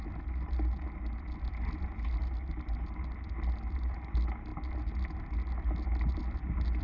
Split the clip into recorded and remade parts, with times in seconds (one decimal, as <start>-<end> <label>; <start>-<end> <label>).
0.0-6.8 recorded